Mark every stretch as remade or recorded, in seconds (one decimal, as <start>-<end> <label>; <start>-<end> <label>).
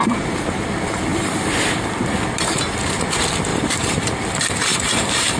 0.0-3.5 recorded; 3.5-4.1 remade; 4.1-4.7 recorded; 4.7-5.4 remade